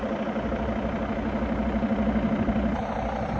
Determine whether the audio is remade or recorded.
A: recorded